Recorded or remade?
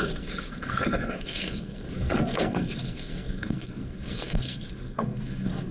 remade